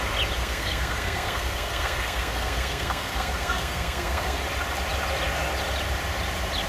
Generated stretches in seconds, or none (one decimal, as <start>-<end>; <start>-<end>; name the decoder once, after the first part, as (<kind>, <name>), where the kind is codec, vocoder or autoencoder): 0.4-4.4 (codec, SNAC)